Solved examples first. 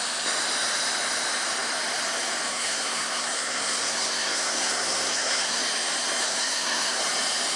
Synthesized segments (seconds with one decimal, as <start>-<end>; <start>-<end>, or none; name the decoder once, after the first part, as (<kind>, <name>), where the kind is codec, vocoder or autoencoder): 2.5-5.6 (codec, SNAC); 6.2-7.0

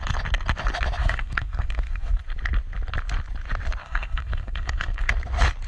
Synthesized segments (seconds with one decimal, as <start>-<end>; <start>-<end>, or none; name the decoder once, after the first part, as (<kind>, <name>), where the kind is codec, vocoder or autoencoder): 1.0-2.2 (codec, SNAC); 3.8-5.1

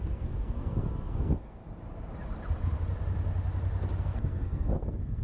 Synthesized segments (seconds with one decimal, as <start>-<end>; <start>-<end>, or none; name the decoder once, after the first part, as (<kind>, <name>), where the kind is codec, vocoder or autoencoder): 0.0-1.6 (codec, SNAC); 4.0-5.2

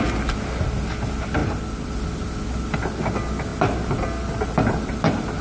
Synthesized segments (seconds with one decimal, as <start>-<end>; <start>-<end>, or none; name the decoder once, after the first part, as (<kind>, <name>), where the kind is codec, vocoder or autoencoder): none

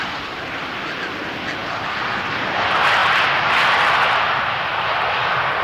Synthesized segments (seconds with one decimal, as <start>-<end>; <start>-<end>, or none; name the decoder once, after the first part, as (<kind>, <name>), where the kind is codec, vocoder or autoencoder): none

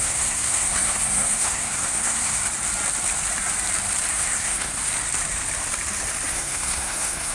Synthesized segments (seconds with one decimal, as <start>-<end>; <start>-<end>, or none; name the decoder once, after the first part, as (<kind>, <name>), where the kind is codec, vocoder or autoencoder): 0.0-2.4 (codec, SNAC); 4.1-4.8; 6.3-7.3